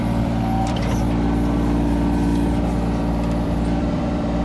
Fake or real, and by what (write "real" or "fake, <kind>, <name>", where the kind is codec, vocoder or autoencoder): fake, vocoder, BigVGAN v2